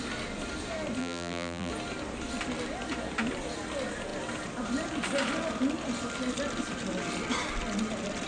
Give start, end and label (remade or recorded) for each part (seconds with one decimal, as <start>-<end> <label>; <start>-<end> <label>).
0.0-1.0 recorded; 1.0-1.7 remade; 1.7-8.3 recorded